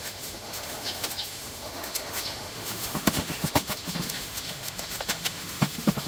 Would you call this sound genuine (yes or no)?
no